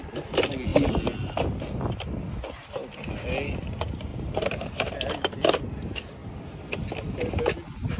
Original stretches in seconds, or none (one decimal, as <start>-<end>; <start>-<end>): 0.0-8.0